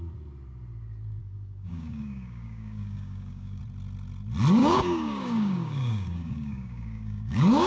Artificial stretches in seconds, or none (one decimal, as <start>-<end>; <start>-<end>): 1.2-3.6; 4.6-7.7